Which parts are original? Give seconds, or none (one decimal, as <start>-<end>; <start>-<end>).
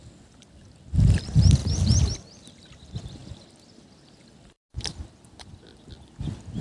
0.0-6.6